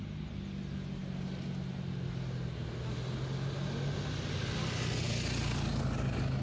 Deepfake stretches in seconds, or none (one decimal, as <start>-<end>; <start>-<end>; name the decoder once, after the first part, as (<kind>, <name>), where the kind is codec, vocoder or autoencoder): none